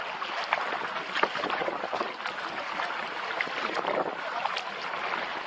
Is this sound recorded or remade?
recorded